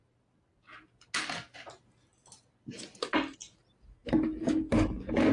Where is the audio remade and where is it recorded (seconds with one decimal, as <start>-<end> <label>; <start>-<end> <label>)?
0.0-5.3 recorded